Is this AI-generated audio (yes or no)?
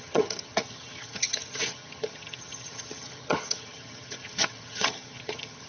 yes